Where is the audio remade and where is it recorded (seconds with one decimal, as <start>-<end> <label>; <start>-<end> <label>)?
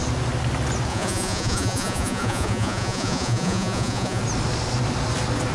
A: 0.0-0.9 recorded; 0.9-4.2 remade; 4.2-5.5 recorded